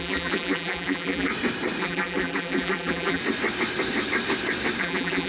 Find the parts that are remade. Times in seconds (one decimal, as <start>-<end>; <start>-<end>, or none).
0.0-1.3; 1.8-3.2; 4.8-5.3